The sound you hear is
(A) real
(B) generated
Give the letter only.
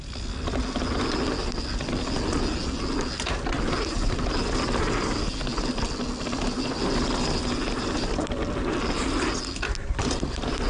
A